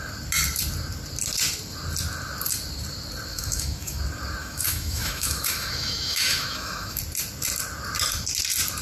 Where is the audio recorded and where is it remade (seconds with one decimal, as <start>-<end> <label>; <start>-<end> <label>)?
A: 0.0-3.3 recorded; 3.3-4.0 remade; 4.0-4.4 recorded; 4.4-7.0 remade; 7.0-8.8 recorded